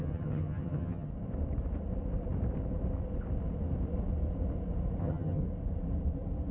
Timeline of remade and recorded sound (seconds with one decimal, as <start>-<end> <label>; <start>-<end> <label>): 0.0-1.1 remade; 1.1-5.0 recorded; 5.0-5.4 remade; 5.4-6.5 recorded